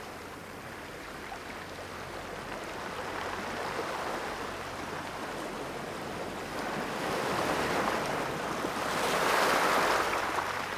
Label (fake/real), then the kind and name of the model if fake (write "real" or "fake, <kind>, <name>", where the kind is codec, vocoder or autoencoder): real